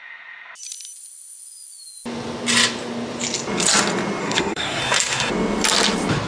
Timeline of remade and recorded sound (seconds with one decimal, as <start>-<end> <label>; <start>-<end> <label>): 0.0-4.2 recorded; 4.2-4.8 remade; 4.8-6.3 recorded

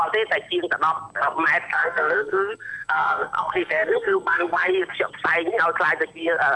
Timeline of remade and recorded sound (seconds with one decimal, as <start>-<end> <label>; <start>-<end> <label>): 0.0-1.7 recorded; 1.7-4.7 remade; 4.7-6.6 recorded

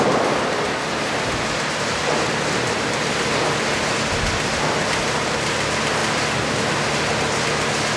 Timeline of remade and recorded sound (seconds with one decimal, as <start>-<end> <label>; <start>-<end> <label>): 0.0-8.0 recorded